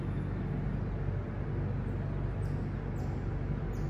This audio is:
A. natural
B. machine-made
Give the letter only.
A